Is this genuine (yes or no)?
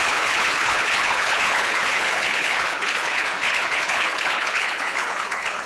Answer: no